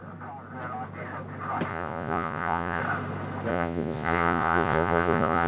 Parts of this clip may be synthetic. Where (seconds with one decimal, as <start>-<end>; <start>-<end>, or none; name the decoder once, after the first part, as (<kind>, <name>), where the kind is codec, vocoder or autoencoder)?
1.7-2.8 (vocoder, Vocos); 3.5-5.5